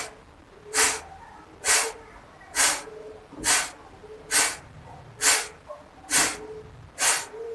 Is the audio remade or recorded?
recorded